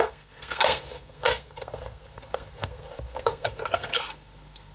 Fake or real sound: fake